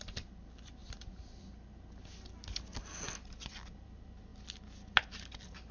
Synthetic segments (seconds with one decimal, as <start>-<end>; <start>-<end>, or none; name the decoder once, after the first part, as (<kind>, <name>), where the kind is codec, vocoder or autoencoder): 0.0-0.8 (vocoder, BigVGAN v2); 2.8-4.3; 5.1-5.7